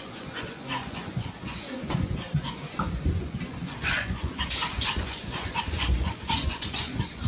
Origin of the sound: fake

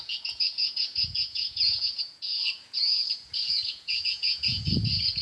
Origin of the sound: fake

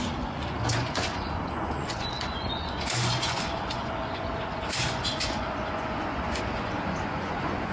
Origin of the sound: fake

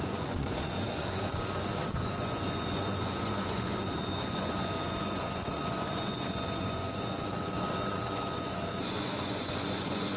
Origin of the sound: fake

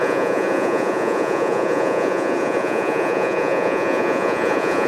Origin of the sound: fake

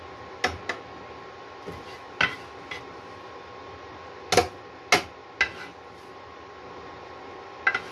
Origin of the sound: real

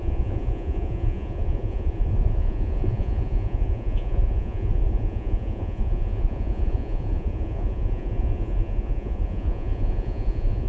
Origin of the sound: fake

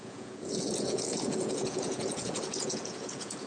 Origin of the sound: fake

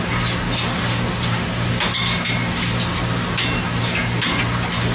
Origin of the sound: real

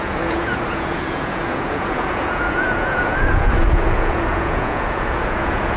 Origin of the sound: fake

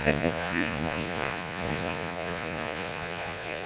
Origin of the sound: fake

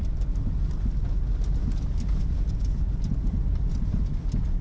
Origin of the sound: real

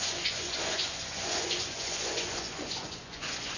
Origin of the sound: fake